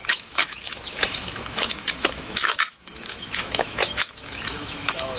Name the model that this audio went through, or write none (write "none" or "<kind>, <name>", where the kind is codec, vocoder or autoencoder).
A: autoencoder, DAC-VAE